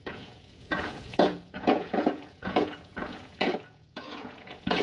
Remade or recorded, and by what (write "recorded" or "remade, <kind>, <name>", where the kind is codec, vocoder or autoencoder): remade, vocoder, Vocos